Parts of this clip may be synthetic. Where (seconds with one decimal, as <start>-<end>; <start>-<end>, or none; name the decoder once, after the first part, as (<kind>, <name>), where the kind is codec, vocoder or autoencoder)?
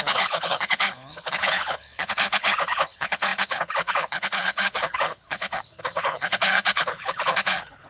0.0-7.9 (codec, HILCodec)